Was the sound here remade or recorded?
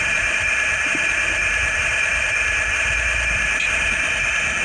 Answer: recorded